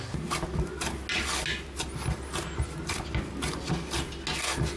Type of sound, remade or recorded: recorded